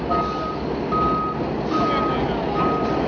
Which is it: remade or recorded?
recorded